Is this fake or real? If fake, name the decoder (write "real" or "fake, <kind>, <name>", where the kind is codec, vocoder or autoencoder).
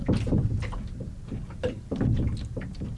real